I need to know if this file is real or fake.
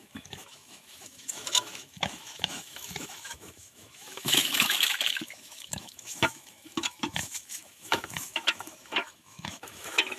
fake